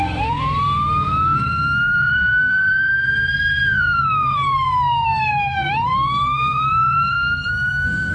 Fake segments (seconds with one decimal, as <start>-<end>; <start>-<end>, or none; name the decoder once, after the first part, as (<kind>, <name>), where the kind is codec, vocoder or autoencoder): 0.0-8.1 (codec, SNAC)